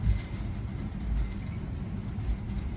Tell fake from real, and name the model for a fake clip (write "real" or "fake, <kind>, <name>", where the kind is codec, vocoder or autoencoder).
real